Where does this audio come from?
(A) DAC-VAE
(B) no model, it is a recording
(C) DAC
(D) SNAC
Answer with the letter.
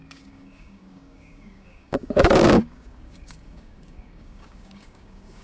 C